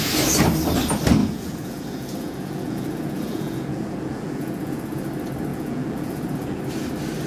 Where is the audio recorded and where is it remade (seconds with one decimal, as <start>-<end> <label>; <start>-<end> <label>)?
0.0-1.2 recorded; 1.2-5.1 remade; 5.1-5.5 recorded; 5.5-6.6 remade; 6.6-7.3 recorded